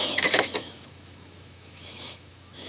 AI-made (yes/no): yes